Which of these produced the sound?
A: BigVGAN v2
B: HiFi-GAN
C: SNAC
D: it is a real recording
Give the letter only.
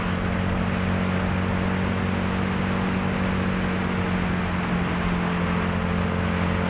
D